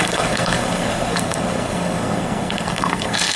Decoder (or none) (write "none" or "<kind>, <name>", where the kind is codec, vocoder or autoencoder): codec, SNAC